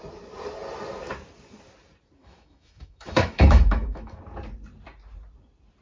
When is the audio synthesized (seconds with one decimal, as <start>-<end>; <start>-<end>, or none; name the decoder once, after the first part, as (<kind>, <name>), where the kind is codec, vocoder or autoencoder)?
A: 2.2-4.2 (autoencoder, DAC-VAE)